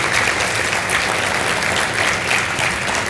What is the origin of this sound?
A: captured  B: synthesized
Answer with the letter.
A